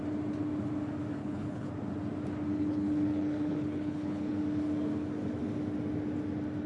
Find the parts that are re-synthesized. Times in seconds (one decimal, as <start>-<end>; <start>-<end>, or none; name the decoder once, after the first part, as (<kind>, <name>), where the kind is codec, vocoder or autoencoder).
1.2-1.7 (codec, HILCodec); 2.5-4.4